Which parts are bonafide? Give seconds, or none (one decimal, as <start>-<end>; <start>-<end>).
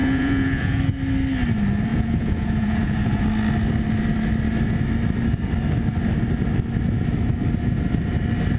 0.8-1.9; 3.2-8.6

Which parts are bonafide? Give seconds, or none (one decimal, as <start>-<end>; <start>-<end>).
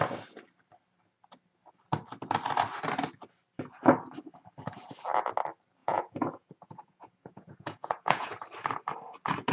0.0-5.8; 8.3-9.5